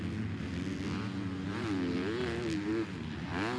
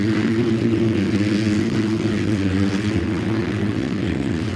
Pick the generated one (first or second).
second